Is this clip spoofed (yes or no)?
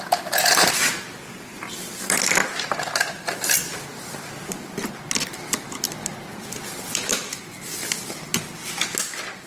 no